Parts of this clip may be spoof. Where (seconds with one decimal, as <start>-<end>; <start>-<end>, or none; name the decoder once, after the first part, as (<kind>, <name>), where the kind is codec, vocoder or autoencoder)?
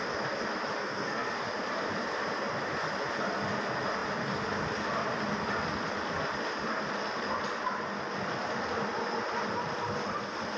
0.8-1.4 (codec, SNAC)